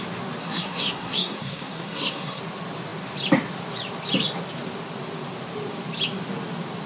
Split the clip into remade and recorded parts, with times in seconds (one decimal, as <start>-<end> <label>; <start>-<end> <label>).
0.0-0.4 recorded; 0.4-2.4 remade; 2.4-6.9 recorded

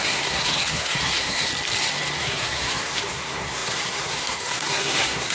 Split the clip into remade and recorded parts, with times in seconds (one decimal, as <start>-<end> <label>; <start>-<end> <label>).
0.0-1.5 remade; 1.5-2.2 recorded; 2.2-5.3 remade

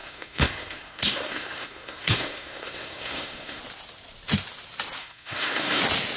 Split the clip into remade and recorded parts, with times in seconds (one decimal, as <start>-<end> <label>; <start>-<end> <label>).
0.0-3.6 remade; 3.6-5.0 recorded; 5.0-5.8 remade; 5.8-6.2 recorded

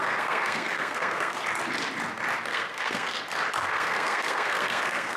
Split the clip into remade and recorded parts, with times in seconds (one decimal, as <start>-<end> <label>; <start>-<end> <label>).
0.0-1.4 remade; 1.4-2.5 recorded; 2.5-3.2 remade; 3.2-3.6 recorded; 3.6-5.2 remade